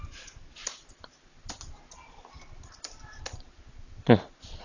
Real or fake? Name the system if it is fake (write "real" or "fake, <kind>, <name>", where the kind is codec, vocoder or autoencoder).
real